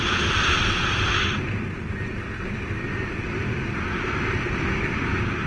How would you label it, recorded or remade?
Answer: recorded